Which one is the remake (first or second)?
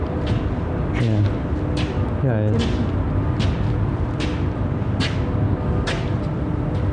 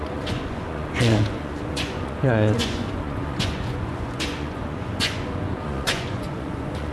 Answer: second